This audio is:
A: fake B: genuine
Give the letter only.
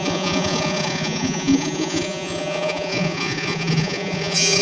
A